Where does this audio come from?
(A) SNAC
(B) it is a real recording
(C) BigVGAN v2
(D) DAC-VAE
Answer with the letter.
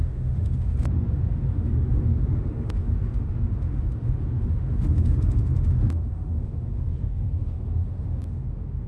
D